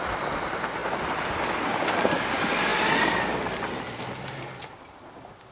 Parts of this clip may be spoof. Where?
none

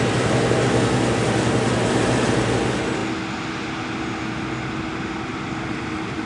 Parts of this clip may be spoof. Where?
1.8-2.3 (vocoder, BigVGAN v2); 5.3-6.2